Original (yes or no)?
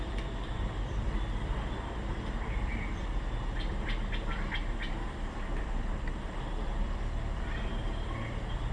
no